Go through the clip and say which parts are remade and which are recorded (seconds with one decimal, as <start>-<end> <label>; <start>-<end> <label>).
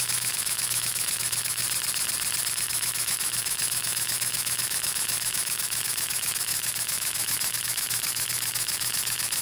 0.0-1.6 remade; 1.6-2.5 recorded; 2.5-9.4 remade